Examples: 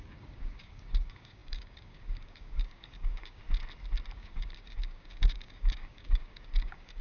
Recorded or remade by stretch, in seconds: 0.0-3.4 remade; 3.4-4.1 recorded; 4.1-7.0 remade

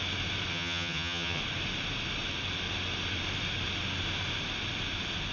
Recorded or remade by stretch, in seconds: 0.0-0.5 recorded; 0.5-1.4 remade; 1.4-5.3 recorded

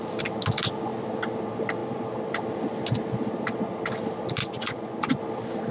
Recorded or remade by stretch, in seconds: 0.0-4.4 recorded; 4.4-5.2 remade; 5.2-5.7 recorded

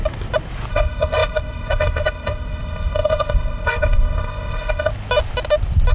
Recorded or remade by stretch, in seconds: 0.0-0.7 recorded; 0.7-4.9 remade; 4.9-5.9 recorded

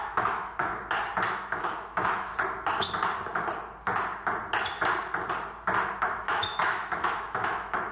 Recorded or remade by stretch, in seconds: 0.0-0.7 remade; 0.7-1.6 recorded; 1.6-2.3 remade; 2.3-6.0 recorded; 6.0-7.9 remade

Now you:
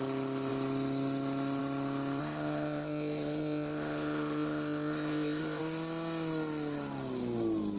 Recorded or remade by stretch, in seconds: 0.0-2.2 recorded; 2.2-5.6 remade; 5.6-7.8 recorded

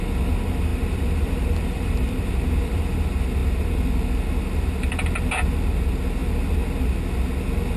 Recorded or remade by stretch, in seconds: 0.0-0.7 recorded; 0.7-2.8 remade; 2.8-7.8 recorded